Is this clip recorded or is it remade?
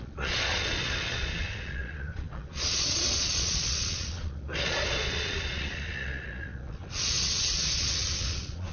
remade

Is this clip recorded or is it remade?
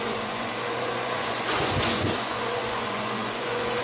remade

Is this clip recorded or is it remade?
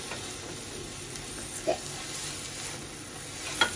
recorded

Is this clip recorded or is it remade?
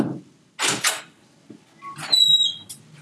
recorded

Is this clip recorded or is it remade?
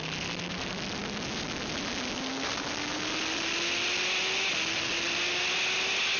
recorded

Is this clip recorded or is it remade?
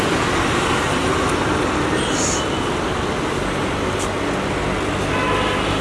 recorded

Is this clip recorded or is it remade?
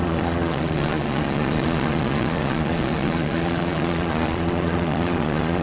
remade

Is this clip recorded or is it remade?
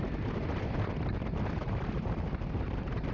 recorded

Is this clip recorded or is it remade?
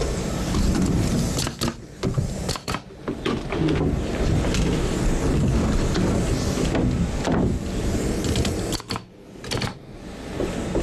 recorded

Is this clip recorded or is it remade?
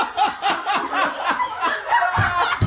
recorded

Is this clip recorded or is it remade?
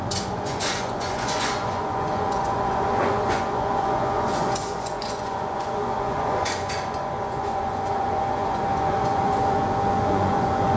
remade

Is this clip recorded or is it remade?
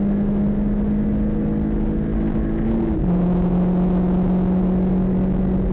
recorded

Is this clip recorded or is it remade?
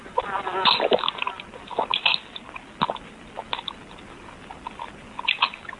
recorded